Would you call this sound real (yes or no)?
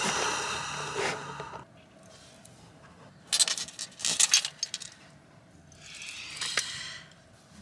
yes